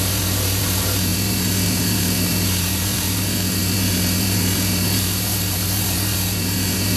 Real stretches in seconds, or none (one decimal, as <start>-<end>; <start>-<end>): none